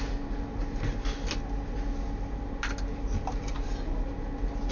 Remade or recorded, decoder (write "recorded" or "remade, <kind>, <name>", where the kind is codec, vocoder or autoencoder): recorded